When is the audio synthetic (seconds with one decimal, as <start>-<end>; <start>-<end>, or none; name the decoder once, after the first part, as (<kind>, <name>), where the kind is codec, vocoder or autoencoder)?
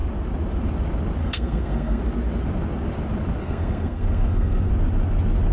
1.2-2.0 (codec, SNAC); 3.4-4.7